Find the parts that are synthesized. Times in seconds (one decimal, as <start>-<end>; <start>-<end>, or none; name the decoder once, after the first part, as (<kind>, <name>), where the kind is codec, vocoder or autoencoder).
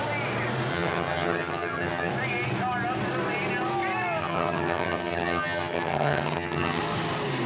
0.7-2.1 (vocoder, HiFi-GAN); 4.2-6.8